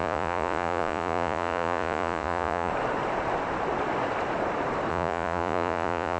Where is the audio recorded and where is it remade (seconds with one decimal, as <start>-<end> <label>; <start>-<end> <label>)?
0.0-2.7 remade; 2.7-4.9 recorded; 4.9-6.2 remade